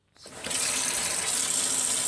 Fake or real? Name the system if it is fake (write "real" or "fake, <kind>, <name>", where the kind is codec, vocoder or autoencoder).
real